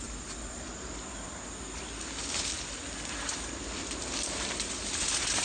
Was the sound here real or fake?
real